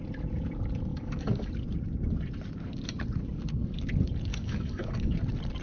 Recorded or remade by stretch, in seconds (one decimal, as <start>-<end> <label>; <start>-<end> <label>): 0.0-0.9 recorded; 0.9-1.5 remade; 1.5-4.3 recorded; 4.3-5.1 remade; 5.1-5.6 recorded